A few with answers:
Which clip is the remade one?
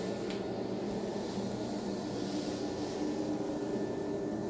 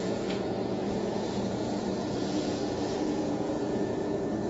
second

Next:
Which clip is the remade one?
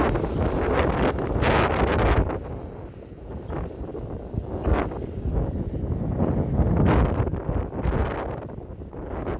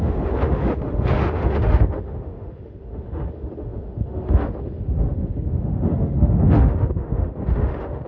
second